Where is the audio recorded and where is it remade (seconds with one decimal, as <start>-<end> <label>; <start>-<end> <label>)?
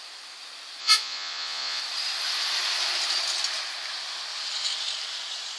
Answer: 0.0-0.8 recorded; 0.8-1.8 remade; 1.8-5.6 recorded